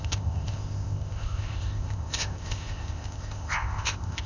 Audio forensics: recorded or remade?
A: remade